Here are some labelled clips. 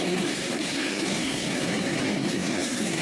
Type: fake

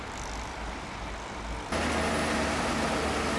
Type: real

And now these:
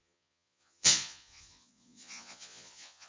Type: fake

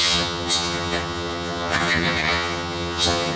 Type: fake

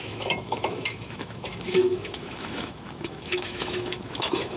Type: fake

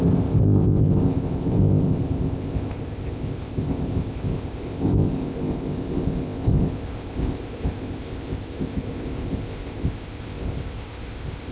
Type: fake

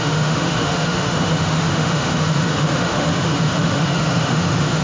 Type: fake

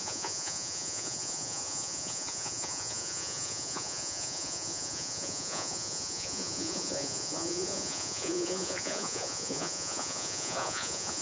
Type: fake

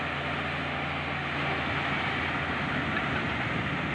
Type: real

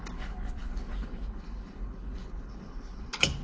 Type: fake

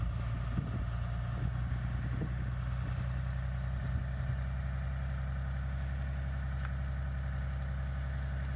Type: real